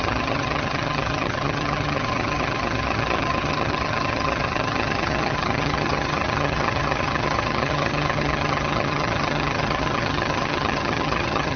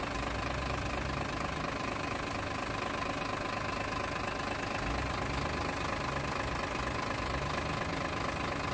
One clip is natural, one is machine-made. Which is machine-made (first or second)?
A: first